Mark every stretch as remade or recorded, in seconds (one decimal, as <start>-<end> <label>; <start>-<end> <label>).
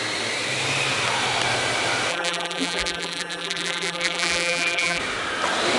0.0-2.1 recorded; 2.1-5.0 remade; 5.0-5.8 recorded